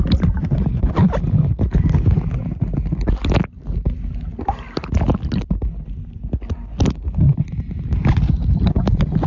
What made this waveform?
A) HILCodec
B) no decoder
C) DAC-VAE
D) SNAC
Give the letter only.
B